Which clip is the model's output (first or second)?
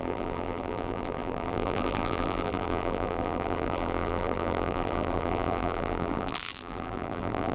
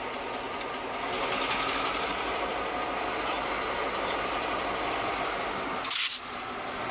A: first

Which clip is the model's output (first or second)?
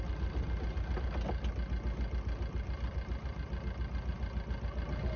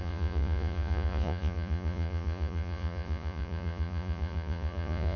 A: second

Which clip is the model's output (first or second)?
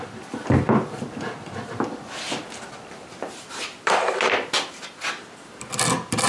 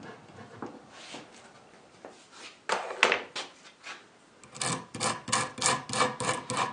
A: first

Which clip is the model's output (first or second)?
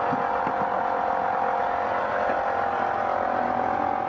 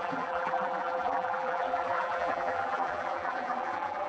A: second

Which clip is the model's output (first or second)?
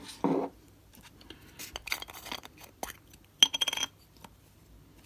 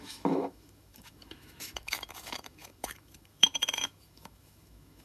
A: second